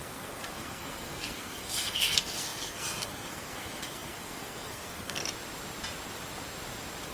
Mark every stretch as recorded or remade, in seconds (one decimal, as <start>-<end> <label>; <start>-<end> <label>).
0.0-5.2 remade; 5.2-7.1 recorded